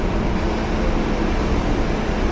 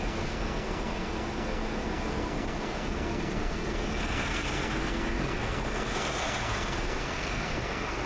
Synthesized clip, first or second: second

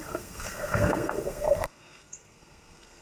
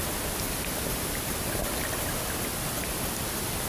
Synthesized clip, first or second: first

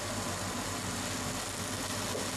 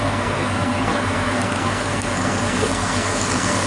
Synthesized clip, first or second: second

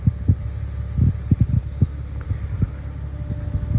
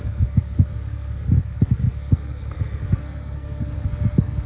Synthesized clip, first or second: second